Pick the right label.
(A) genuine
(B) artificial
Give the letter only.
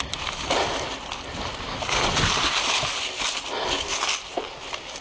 A